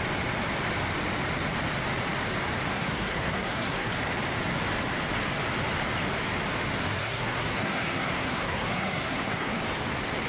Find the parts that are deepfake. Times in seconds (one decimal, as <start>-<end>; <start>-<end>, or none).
2.7-3.9; 6.8-9.6